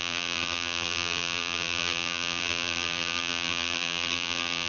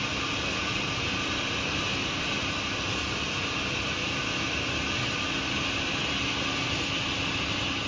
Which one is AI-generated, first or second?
first